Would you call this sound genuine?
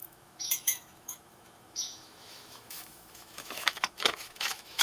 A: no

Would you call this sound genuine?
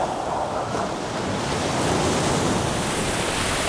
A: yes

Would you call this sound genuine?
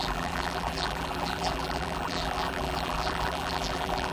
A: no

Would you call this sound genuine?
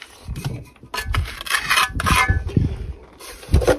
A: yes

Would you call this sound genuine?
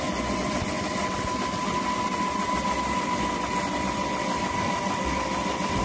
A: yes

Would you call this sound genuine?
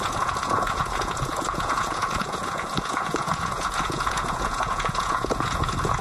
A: no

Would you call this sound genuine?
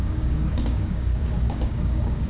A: no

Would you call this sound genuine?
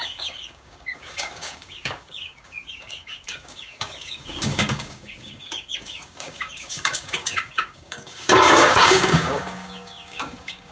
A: no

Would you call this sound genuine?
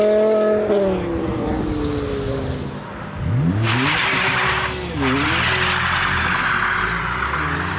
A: yes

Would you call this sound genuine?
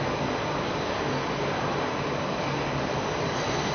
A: yes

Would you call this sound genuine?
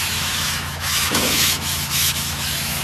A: no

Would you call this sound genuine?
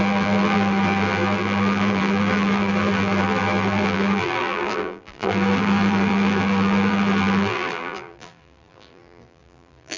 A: no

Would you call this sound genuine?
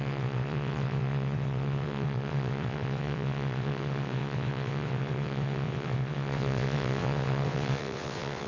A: no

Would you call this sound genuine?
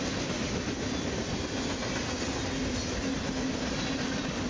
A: yes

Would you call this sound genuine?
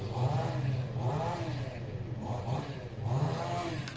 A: yes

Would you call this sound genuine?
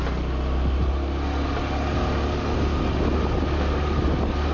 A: yes